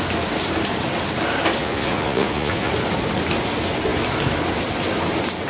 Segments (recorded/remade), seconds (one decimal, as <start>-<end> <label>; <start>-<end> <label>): 0.0-1.6 recorded; 1.6-2.7 remade; 2.7-5.5 recorded